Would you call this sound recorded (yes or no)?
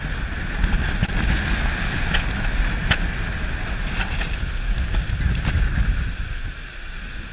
yes